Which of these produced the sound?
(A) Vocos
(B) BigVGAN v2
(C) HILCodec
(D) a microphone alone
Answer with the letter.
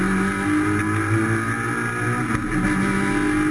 D